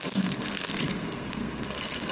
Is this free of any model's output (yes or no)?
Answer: no